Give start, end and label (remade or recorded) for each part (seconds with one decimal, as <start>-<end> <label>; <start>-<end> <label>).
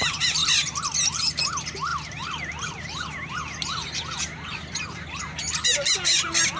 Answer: 0.0-6.6 recorded